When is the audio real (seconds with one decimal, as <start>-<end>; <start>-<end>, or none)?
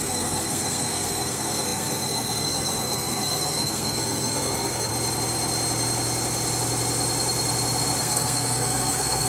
4.9-8.0